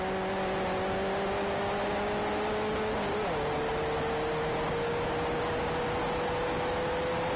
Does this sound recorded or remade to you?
recorded